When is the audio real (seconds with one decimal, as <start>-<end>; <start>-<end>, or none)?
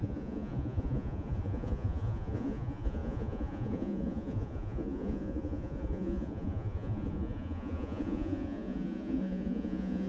none